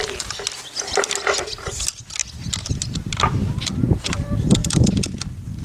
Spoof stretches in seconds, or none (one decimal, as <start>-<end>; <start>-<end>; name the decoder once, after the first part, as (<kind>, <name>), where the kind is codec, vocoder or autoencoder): none